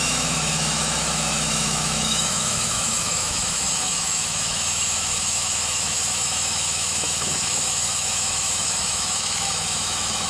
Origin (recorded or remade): remade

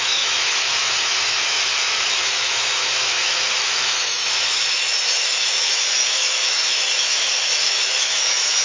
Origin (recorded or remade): remade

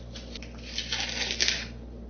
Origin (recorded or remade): recorded